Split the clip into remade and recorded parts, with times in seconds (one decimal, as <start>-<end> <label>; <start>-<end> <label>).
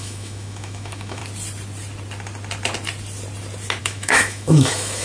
0.0-1.2 remade; 1.2-3.8 recorded; 3.8-5.0 remade